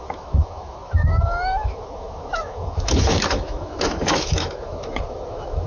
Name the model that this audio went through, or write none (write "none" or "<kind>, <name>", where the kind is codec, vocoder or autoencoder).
autoencoder, DAC-VAE